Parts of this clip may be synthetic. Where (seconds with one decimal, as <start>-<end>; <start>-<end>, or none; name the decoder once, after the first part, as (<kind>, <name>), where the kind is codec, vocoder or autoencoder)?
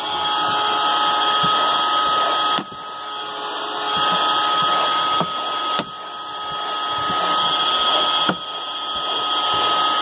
none